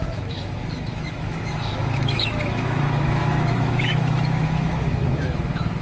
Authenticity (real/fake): fake